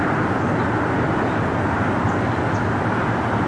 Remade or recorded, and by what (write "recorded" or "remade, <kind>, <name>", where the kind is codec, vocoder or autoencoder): recorded